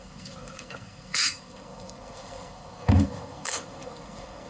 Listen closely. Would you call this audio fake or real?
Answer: fake